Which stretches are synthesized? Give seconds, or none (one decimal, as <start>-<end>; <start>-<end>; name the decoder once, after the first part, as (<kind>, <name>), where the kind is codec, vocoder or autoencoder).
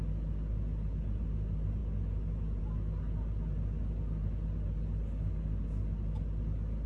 none